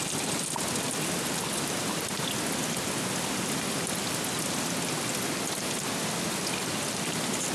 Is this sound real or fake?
real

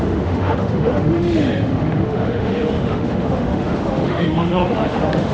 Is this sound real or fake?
fake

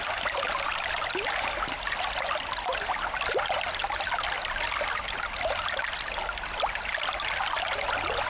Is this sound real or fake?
real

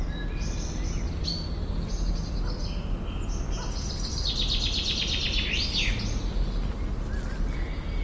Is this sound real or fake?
real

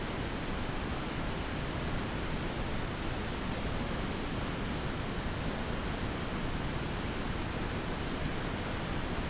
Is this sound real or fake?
real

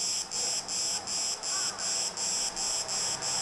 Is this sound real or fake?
real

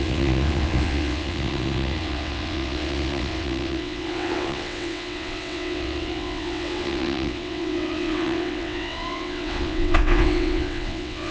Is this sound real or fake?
fake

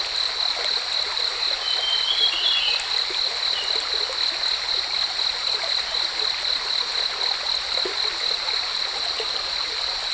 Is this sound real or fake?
real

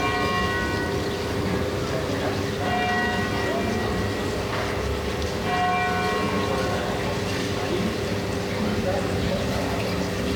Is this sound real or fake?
real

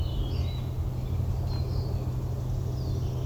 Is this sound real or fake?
real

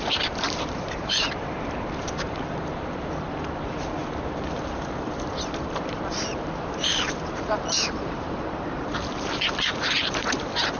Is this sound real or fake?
fake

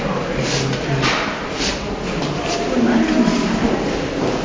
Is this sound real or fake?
real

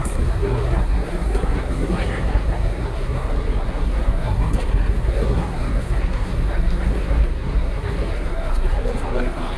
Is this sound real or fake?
fake